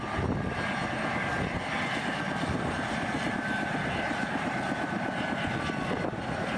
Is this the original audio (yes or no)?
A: yes